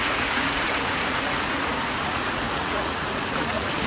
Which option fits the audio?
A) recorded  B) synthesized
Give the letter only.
B